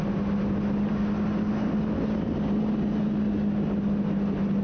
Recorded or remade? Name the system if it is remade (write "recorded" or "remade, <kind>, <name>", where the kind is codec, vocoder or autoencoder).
recorded